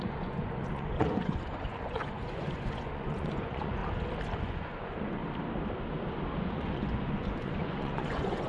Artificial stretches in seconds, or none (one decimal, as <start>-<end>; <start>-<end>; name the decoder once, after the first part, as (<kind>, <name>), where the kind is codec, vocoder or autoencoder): 0.0-3.8 (vocoder, Vocos); 4.4-5.2; 6.4-8.5